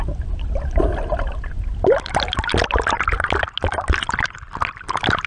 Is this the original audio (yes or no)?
yes